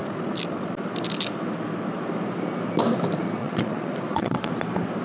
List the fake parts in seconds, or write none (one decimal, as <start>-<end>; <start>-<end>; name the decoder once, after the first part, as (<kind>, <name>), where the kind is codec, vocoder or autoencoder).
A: 3.4-4.5 (vocoder, Vocos)

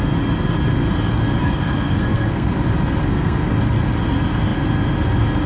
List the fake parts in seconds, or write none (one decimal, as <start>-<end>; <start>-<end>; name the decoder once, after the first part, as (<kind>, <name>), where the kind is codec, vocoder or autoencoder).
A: 1.4-2.5 (codec, SNAC); 3.0-3.5

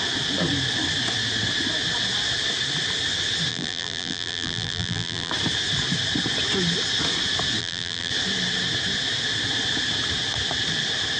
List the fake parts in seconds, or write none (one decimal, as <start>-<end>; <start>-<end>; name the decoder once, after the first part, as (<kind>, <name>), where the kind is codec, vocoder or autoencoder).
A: 3.5-5.3 (vocoder, BigVGAN v2); 7.6-8.1

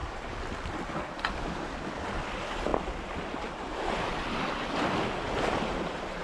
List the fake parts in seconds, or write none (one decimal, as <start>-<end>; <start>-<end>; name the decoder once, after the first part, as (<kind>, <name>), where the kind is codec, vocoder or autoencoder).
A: none

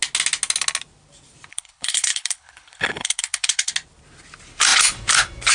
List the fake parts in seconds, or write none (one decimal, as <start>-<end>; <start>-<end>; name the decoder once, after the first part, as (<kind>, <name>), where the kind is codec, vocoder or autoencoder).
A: 1.5-3.7 (codec, HILCodec)

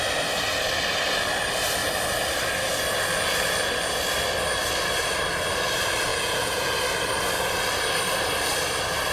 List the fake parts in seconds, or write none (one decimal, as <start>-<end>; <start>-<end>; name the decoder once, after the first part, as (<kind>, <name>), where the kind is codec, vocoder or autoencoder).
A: 6.1-6.7 (vocoder, Vocos)

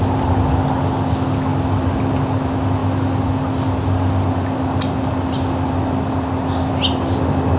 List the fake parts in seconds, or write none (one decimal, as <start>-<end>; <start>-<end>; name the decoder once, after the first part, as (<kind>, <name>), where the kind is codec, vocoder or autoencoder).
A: none

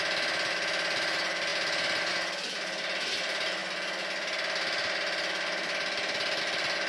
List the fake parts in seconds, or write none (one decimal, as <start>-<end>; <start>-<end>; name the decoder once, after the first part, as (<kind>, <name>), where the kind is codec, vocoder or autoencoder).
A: none